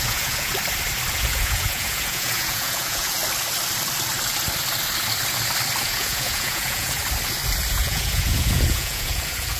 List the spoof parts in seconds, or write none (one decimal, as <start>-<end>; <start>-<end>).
0.0-0.5; 1.1-3.2; 5.8-7.0; 7.7-9.6